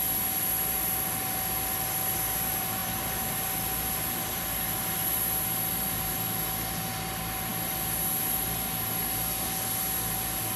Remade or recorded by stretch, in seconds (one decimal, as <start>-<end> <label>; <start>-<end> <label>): 0.0-10.6 recorded